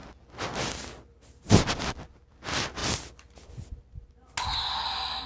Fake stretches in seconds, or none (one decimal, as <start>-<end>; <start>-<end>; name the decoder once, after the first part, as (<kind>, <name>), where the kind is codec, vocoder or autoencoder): none